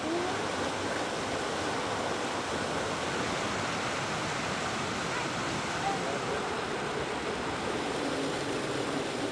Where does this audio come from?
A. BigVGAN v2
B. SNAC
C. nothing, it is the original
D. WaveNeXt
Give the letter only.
C